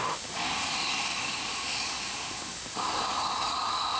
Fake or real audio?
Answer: fake